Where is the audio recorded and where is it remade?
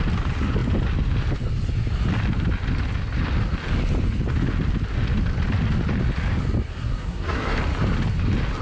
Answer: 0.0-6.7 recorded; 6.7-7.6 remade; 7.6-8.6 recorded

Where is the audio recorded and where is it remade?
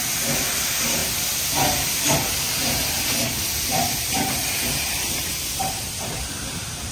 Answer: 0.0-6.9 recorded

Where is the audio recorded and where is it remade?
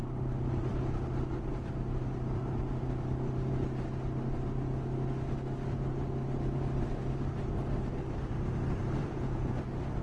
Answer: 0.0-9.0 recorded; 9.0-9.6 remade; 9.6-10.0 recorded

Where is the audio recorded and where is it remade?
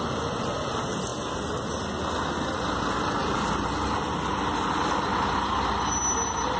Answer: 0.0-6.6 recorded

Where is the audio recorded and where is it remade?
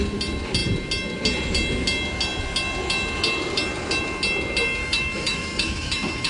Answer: 0.0-4.8 recorded; 4.8-6.3 remade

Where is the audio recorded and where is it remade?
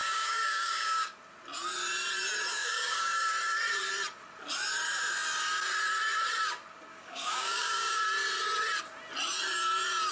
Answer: 0.0-1.1 remade; 1.1-2.5 recorded; 2.5-3.3 remade; 3.3-6.9 recorded; 6.9-8.0 remade; 8.0-10.1 recorded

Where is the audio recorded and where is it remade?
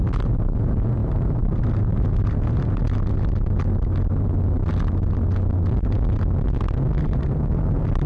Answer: 0.0-2.8 remade; 2.8-7.0 recorded; 7.0-8.1 remade